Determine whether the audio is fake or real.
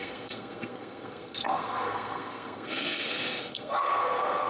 fake